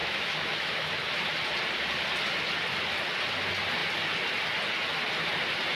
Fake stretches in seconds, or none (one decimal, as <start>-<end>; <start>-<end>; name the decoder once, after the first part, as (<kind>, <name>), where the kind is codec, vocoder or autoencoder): 0.0-0.9 (autoencoder, DAC-VAE)

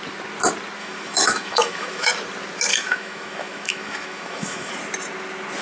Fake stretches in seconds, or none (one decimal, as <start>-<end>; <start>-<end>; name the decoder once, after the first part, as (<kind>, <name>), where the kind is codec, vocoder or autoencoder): 0.8-2.1 (autoencoder, DAC-VAE); 2.7-4.7